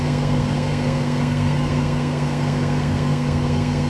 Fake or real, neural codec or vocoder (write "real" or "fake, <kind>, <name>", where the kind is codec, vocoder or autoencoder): fake, codec, SNAC